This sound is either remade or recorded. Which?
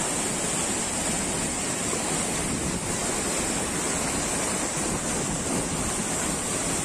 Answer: recorded